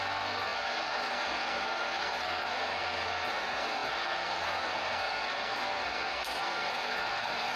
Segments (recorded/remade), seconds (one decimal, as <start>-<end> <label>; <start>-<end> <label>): 0.0-7.6 remade